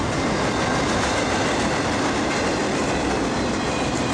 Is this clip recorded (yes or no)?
yes